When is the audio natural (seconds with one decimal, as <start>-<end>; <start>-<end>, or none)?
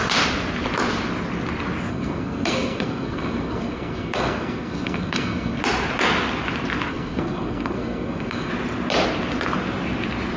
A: 0.0-1.9; 5.6-6.9; 8.5-10.4